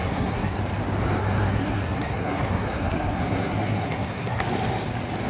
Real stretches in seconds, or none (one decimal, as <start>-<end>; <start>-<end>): 0.6-1.2; 4.4-5.3